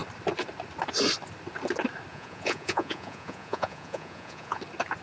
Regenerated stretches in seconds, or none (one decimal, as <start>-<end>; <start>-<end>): 2.1-4.6